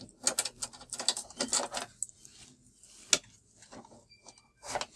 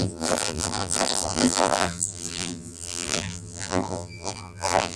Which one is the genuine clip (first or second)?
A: first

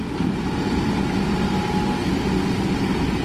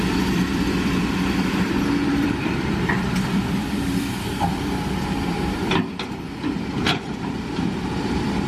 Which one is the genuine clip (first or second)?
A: first